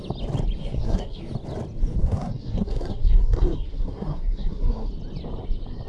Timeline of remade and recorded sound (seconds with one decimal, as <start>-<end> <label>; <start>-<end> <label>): 0.0-0.6 recorded; 0.6-1.2 remade; 1.2-2.0 recorded; 2.0-4.9 remade; 4.9-5.9 recorded